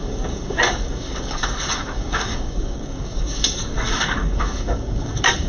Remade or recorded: remade